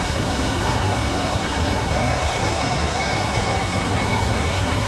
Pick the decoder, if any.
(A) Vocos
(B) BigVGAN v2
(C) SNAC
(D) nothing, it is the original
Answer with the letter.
C